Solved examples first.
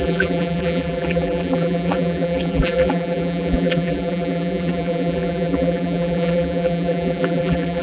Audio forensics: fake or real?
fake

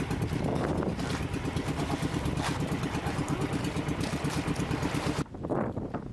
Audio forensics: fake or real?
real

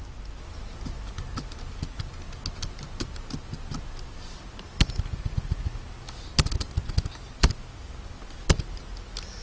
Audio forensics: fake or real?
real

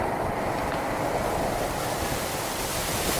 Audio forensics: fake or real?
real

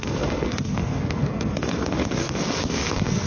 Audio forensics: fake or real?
fake